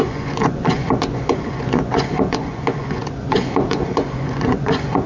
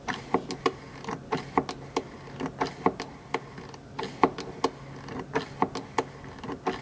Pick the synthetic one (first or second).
first